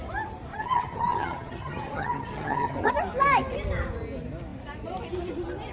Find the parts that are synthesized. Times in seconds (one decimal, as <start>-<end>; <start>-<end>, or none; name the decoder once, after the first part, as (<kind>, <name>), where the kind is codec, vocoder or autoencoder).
0.5-2.9 (vocoder, HiFi-GAN)